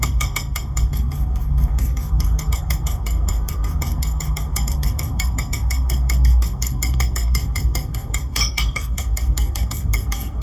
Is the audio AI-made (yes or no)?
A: yes